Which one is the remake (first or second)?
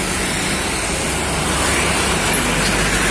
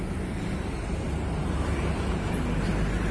second